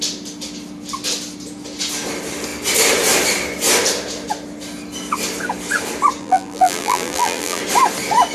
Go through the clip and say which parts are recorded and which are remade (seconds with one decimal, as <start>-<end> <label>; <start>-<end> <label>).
0.0-6.2 recorded; 6.2-7.6 remade; 7.6-8.3 recorded